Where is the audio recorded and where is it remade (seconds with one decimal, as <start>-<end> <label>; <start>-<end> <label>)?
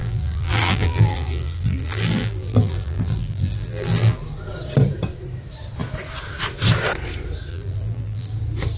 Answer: 0.0-4.2 remade; 4.2-7.5 recorded; 7.5-8.3 remade; 8.3-8.8 recorded